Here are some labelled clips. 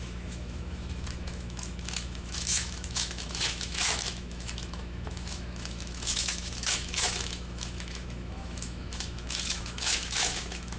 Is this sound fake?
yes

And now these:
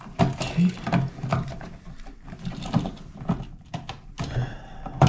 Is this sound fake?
no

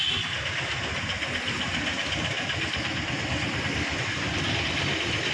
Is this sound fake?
no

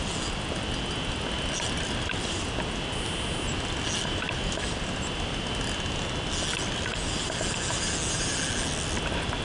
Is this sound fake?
no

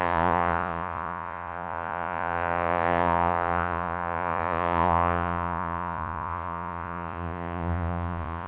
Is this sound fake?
yes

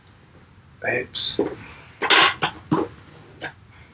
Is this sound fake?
no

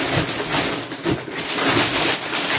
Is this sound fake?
no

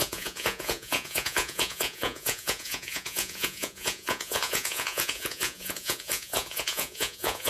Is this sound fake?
yes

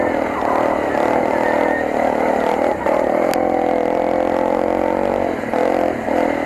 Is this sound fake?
no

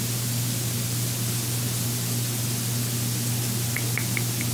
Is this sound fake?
no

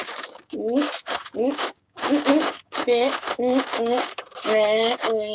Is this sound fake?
yes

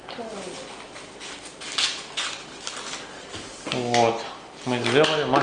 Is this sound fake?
no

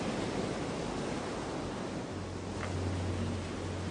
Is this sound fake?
no